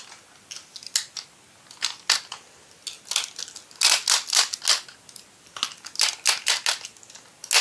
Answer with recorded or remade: recorded